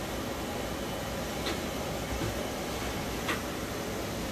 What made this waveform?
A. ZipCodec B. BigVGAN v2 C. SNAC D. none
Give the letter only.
D